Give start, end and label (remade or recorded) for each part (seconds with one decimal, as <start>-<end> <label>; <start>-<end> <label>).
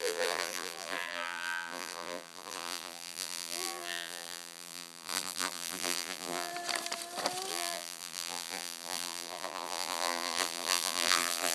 0.0-6.5 remade; 6.5-7.5 recorded; 7.5-11.5 remade